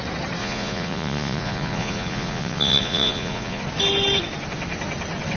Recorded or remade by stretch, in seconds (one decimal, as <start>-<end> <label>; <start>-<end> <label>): 0.0-0.4 recorded; 0.4-3.6 remade; 3.6-5.4 recorded